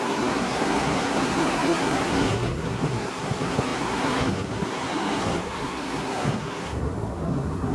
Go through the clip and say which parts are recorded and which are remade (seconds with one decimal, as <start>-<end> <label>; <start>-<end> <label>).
0.0-7.7 remade

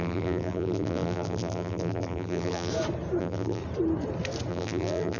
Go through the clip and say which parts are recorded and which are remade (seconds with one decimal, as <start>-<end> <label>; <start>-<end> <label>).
0.0-2.7 remade; 2.7-3.2 recorded; 3.2-3.6 remade; 3.6-4.5 recorded; 4.5-5.2 remade

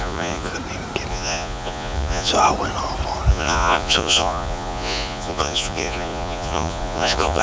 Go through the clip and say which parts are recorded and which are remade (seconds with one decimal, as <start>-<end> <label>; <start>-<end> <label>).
0.0-0.5 remade; 0.5-1.1 recorded; 1.1-2.3 remade; 2.3-3.3 recorded; 3.3-7.4 remade

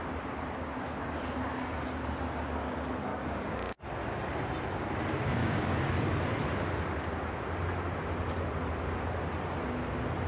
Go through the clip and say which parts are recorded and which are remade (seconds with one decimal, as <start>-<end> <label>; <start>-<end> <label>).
0.0-3.1 recorded; 3.1-3.8 remade; 3.8-5.4 recorded; 5.4-5.9 remade; 5.9-10.3 recorded

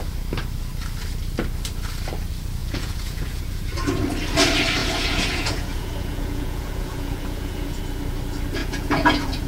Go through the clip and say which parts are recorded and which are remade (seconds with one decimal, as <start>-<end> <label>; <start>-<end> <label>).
0.0-2.6 recorded; 2.6-3.4 remade; 3.4-4.8 recorded; 4.8-7.8 remade; 7.8-8.6 recorded; 8.6-9.5 remade